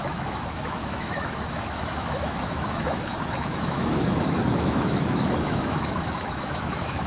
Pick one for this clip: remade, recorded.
remade